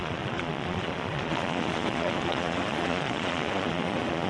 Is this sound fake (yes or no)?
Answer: yes